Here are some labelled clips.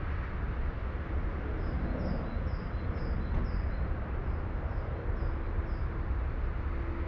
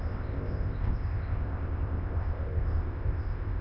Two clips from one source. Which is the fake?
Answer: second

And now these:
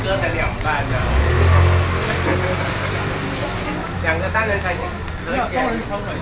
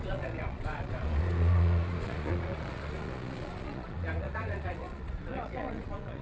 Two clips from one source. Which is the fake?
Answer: second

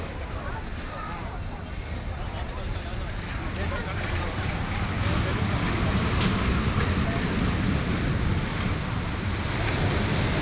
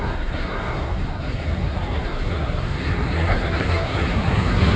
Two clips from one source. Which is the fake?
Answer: second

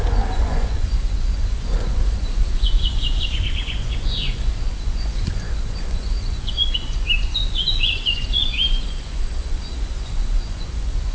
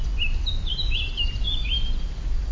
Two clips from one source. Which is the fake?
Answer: first